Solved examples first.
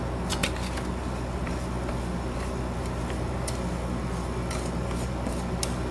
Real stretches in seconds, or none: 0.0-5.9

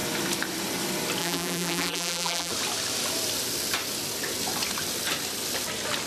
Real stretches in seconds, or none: 0.0-1.2; 2.5-6.1

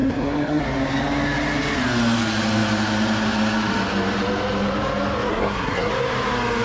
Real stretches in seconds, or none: 0.6-5.3; 5.9-6.6

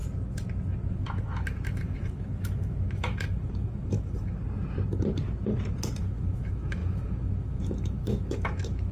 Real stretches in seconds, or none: 0.0-0.9; 4.4-6.0

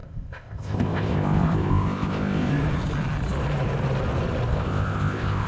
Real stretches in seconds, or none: 2.5-4.5